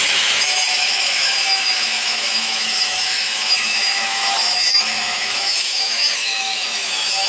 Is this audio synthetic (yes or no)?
yes